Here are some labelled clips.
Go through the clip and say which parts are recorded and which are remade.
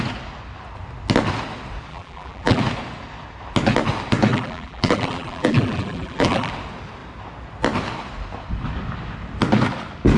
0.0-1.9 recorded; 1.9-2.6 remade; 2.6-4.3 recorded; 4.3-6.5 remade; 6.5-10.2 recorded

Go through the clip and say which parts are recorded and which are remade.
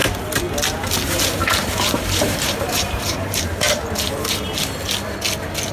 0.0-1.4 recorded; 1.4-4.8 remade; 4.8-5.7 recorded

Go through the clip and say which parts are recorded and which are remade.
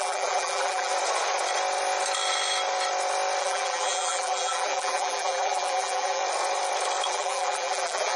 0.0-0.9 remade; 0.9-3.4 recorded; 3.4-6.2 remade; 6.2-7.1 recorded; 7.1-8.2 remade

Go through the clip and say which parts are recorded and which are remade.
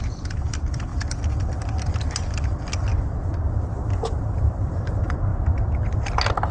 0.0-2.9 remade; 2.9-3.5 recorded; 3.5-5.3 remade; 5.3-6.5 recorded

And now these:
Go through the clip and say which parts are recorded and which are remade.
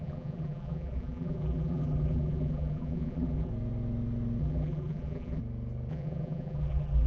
0.0-3.5 remade; 3.5-4.4 recorded; 4.4-5.4 remade; 5.4-5.9 recorded; 5.9-7.1 remade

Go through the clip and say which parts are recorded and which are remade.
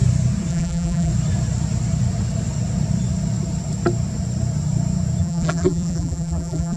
0.0-0.5 recorded; 0.5-1.1 remade; 1.1-5.2 recorded; 5.2-6.8 remade